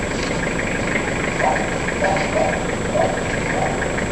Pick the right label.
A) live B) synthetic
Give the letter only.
A